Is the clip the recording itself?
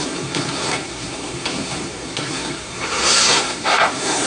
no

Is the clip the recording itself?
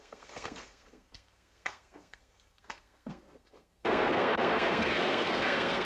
no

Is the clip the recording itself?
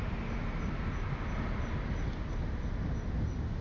yes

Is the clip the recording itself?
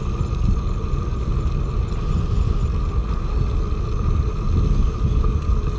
yes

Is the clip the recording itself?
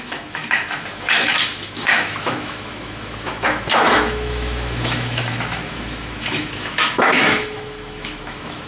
no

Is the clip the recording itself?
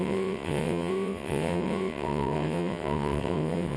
no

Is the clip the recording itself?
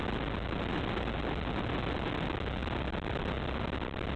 yes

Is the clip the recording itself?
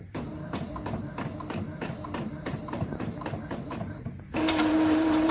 no